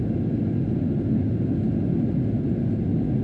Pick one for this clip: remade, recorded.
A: recorded